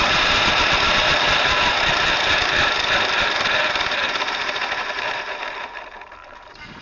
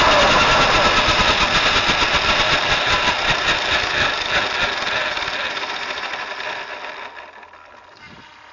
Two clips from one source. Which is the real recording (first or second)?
second